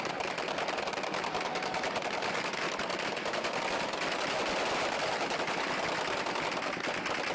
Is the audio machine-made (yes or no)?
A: no